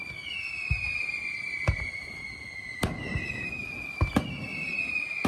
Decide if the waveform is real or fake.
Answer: real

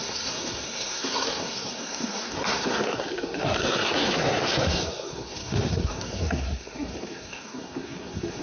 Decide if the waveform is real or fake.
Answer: fake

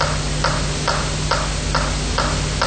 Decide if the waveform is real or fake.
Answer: real